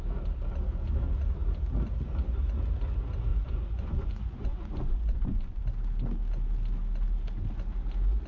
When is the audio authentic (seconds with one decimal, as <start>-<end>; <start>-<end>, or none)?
0.0-3.3; 5.6-8.3